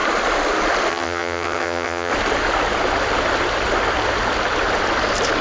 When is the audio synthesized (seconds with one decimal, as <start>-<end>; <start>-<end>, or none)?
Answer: 0.9-2.1